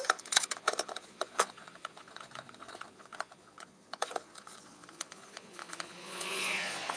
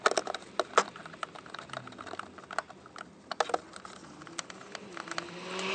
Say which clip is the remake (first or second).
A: first